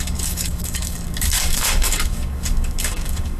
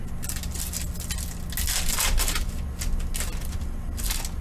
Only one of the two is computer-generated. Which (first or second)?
first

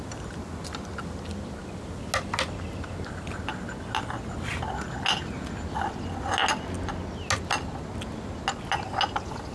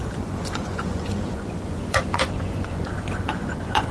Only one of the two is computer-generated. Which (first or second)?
second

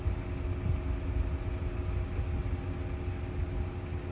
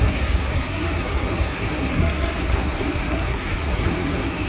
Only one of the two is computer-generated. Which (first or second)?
second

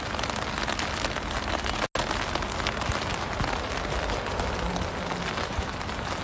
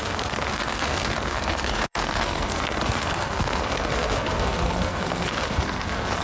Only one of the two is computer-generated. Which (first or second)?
second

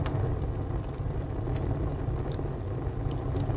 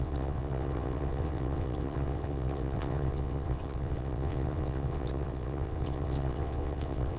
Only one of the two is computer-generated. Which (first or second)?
second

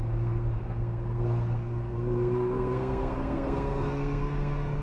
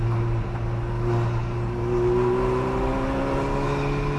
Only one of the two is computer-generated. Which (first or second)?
first